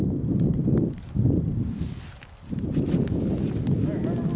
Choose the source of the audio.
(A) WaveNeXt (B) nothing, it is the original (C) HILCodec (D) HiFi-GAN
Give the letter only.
B